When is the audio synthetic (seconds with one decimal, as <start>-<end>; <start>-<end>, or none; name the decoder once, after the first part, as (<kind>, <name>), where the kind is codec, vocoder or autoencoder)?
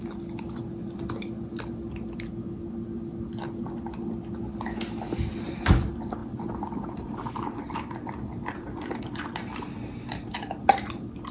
none